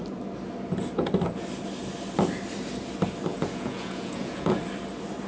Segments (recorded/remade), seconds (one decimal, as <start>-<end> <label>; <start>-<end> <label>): 0.0-3.3 recorded; 3.3-4.6 remade; 4.6-5.3 recorded